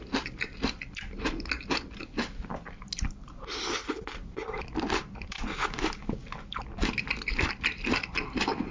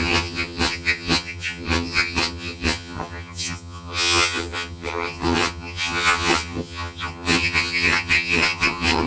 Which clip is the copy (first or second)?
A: second